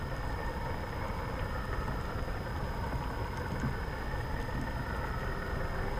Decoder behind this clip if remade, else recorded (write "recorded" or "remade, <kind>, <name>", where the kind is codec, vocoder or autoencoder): recorded